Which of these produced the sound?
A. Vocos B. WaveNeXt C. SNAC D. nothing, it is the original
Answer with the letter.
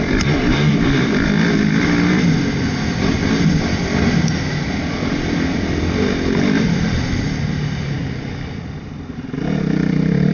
D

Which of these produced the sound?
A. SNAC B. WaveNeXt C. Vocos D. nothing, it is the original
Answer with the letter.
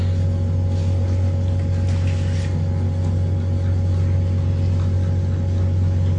D